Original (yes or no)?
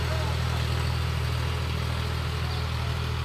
yes